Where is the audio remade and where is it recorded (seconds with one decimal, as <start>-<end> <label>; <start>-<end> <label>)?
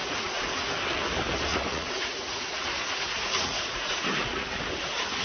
0.0-0.7 remade; 0.7-1.5 recorded; 1.5-4.6 remade; 4.6-5.2 recorded